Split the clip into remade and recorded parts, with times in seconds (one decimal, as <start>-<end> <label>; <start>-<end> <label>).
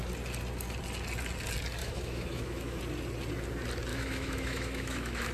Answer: 0.0-1.8 recorded; 1.8-2.8 remade; 2.8-3.9 recorded; 3.9-5.3 remade